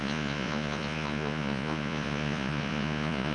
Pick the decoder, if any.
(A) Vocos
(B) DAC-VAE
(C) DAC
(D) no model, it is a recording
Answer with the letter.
A